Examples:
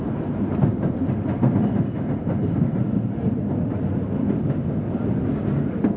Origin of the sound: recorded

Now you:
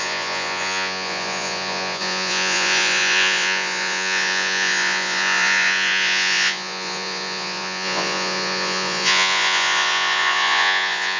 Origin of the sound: remade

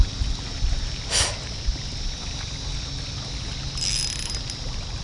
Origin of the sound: recorded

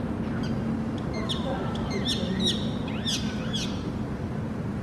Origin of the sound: recorded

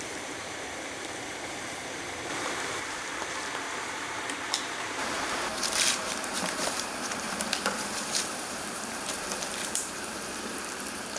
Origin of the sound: remade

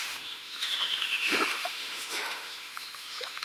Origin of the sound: remade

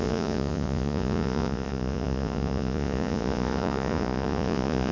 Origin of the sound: remade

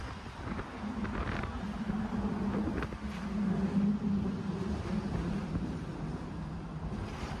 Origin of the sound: recorded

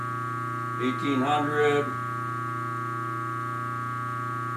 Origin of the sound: recorded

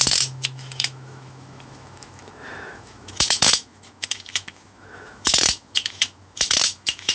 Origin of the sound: remade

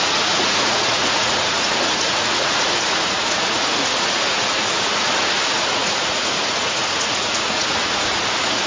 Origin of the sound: remade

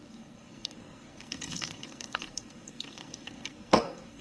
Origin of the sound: remade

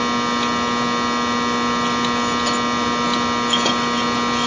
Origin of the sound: recorded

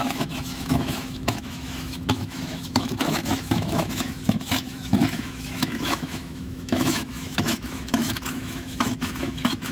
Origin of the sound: remade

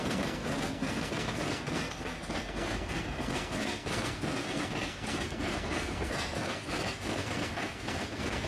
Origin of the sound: remade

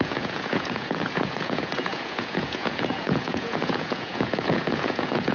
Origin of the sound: remade